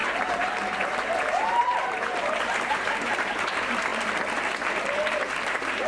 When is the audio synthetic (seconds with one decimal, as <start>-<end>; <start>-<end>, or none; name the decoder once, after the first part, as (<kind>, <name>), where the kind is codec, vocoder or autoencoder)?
0.0-3.9 (vocoder, BigVGAN v2); 5.5-5.9